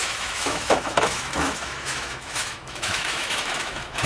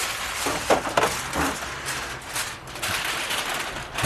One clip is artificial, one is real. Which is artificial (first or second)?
first